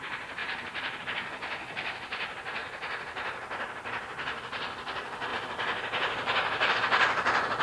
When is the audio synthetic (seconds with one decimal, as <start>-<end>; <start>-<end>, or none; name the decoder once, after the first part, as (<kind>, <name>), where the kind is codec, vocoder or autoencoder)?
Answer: 0.4-1.0 (vocoder, BigVGAN v2); 2.6-3.9; 5.3-6.7

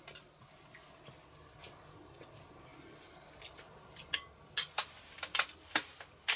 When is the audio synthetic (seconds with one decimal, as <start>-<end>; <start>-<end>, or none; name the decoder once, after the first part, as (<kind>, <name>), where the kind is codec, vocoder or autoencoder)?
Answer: none